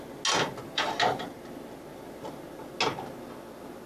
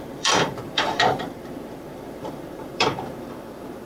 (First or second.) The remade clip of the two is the second